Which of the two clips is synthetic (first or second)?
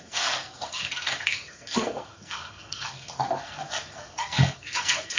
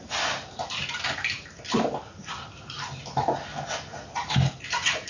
first